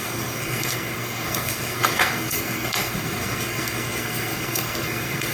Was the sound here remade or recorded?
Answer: remade